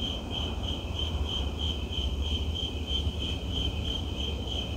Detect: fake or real fake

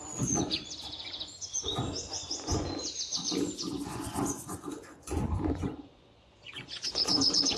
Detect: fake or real fake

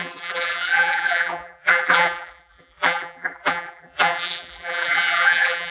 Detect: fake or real fake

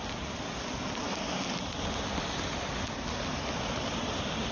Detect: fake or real real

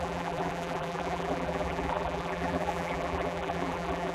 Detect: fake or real fake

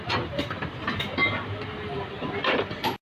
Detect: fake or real real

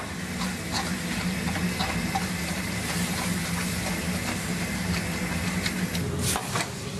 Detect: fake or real real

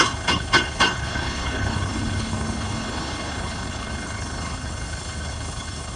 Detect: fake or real fake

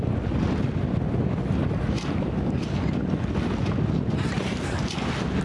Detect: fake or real real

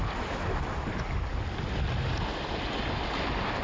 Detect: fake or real real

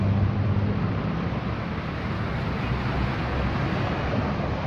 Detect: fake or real real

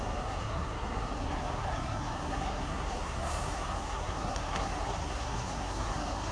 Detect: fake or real fake